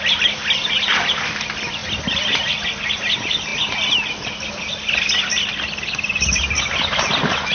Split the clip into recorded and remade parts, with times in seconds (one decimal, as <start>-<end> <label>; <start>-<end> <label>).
0.0-7.5 recorded